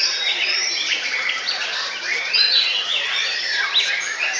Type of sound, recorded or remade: remade